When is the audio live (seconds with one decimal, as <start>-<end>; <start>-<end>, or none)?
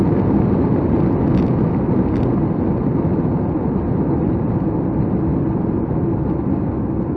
0.0-7.2